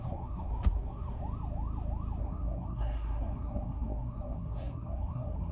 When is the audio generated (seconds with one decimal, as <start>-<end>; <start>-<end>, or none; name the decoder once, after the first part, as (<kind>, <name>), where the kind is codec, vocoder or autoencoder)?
0.0-1.2 (codec, SNAC); 2.2-5.5